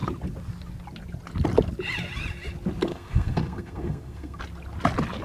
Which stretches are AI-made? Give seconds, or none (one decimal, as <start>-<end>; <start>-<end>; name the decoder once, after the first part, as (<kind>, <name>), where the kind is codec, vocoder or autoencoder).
2.9-4.4 (codec, SNAC)